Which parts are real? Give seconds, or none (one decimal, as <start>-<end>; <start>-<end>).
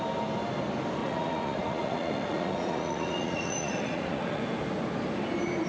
0.0-1.0; 4.4-5.7